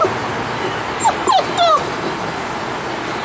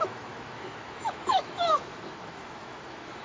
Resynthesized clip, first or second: second